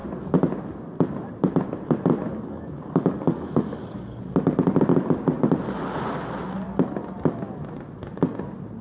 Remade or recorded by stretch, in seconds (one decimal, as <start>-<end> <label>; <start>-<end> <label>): 0.0-2.3 recorded; 2.3-4.2 remade; 4.2-8.8 recorded